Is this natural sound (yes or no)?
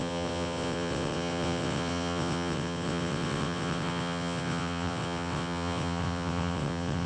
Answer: no